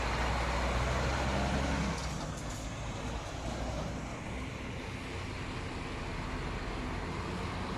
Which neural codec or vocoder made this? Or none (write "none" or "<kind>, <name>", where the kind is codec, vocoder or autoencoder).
none